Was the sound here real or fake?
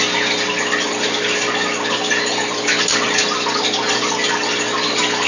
real